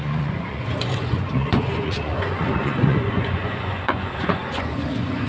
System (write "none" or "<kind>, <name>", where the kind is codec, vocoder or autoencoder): vocoder, Vocos